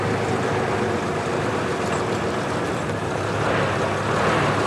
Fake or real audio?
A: real